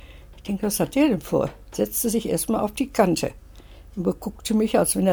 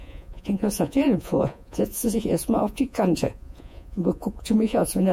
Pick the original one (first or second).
first